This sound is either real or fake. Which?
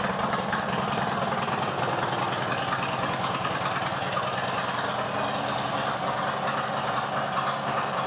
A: real